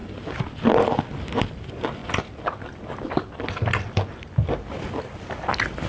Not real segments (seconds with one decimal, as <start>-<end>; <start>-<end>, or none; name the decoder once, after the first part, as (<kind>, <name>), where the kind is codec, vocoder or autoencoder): none